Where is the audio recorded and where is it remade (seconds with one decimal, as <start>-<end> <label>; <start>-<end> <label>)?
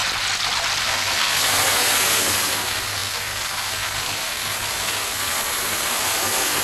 0.0-0.8 recorded; 0.8-6.6 remade